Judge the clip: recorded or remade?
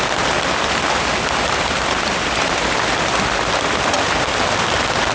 recorded